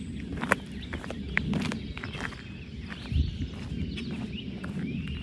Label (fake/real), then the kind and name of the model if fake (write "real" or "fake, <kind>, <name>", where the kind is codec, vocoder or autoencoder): real